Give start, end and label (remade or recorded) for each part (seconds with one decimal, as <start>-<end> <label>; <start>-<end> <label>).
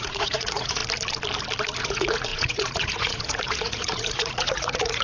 0.0-0.8 remade; 0.8-1.8 recorded; 1.8-5.0 remade